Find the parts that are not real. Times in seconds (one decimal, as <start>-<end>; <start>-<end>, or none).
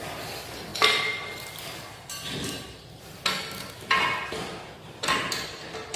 none